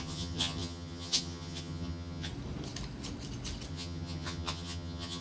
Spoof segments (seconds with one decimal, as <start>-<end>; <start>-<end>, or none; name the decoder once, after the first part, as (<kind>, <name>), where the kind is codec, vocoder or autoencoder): 0.0-2.3 (vocoder, HiFi-GAN); 3.7-5.2